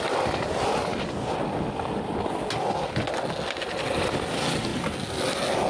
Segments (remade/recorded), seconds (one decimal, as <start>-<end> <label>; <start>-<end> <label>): 0.0-5.7 recorded